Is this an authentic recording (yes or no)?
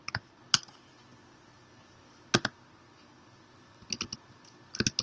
yes